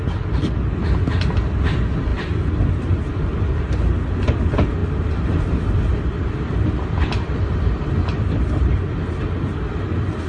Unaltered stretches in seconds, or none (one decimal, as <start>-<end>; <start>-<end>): 0.0-2.1; 2.7-4.8; 8.8-10.3